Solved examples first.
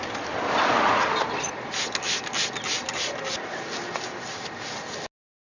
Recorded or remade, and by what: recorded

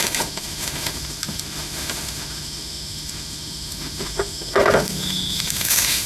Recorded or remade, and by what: remade, autoencoder, DAC-VAE